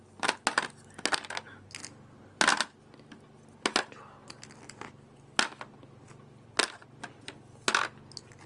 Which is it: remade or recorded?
recorded